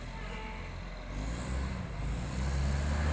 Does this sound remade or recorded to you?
recorded